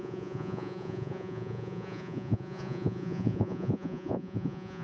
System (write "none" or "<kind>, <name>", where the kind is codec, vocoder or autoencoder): vocoder, Vocos